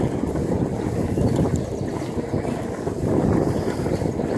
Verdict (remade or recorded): recorded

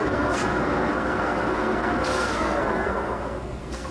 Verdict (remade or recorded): remade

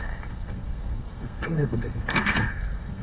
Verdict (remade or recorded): remade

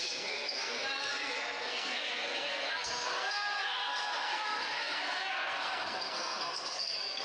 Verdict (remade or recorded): remade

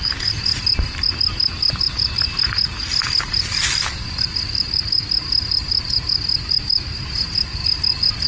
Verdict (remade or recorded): recorded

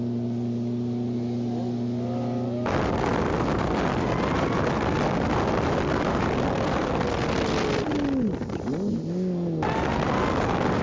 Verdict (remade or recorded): recorded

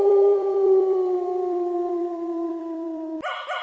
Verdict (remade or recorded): remade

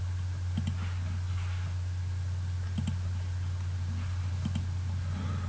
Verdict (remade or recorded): recorded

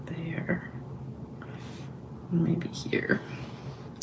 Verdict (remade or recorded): recorded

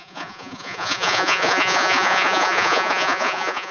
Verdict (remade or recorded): remade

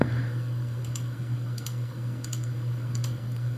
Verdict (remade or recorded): remade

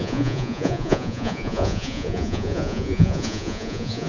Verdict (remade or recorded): remade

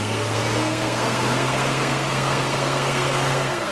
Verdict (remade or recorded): remade